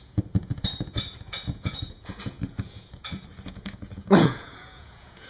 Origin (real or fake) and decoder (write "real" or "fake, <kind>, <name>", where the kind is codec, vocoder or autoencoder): fake, vocoder, Vocos